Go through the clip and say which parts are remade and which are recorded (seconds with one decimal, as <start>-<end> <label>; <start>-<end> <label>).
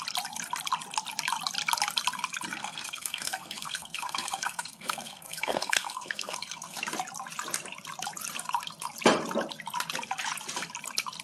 0.0-2.6 recorded; 2.6-6.8 remade; 6.8-11.2 recorded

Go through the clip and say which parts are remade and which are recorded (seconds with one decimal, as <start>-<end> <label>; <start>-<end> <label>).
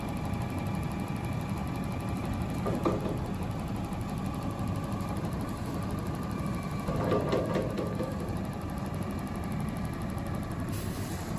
0.0-11.4 recorded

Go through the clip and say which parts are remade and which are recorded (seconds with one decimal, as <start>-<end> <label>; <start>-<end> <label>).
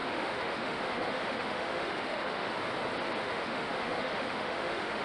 0.0-2.5 remade; 2.5-3.2 recorded; 3.2-5.0 remade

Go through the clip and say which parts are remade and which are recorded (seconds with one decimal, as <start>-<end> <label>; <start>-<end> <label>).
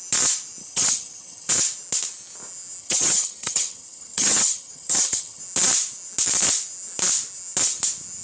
0.0-0.6 recorded; 0.6-1.5 remade; 1.5-2.8 recorded; 2.8-5.4 remade; 5.4-8.2 recorded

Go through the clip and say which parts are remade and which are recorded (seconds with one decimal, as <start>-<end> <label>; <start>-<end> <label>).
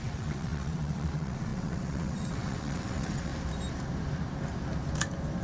0.0-3.3 remade; 3.3-5.4 recorded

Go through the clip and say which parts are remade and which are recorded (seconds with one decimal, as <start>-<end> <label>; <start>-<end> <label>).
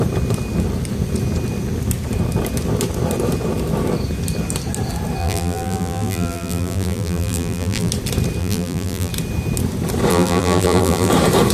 0.0-5.2 recorded; 5.2-7.9 remade; 7.9-8.4 recorded; 8.4-9.1 remade; 9.1-10.1 recorded; 10.1-11.1 remade; 11.1-11.5 recorded